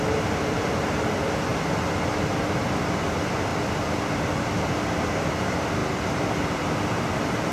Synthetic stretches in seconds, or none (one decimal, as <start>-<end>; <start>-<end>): none